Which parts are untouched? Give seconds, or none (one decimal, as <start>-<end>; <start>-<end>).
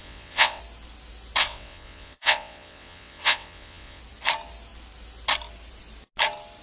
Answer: 0.6-1.4; 4.0-6.6